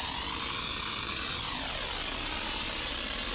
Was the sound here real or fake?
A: fake